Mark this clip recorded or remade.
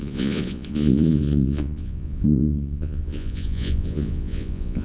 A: remade